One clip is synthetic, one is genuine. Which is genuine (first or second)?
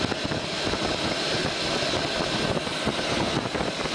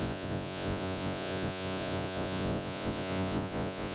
first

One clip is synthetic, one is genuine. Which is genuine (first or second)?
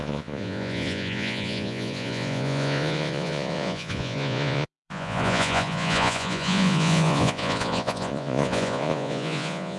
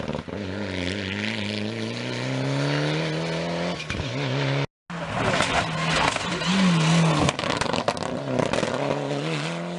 second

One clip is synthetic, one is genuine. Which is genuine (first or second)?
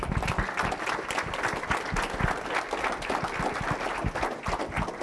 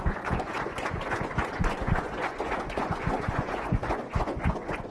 first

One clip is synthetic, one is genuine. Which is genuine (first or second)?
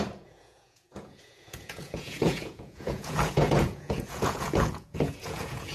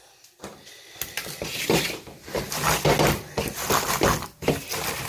second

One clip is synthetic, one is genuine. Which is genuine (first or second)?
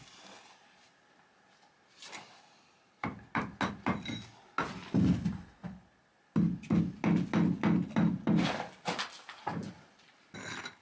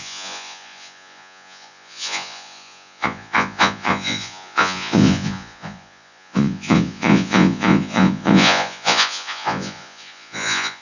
first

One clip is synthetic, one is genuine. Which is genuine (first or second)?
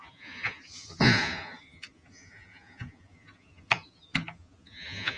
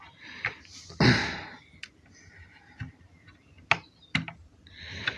second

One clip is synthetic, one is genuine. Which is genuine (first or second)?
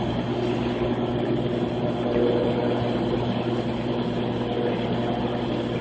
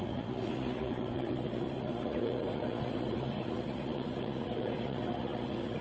first